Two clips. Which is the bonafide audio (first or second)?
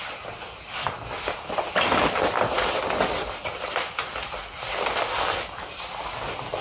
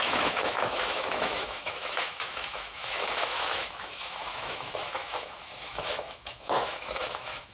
first